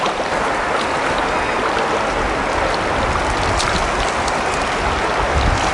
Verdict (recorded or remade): recorded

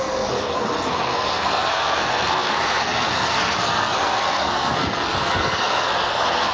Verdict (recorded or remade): remade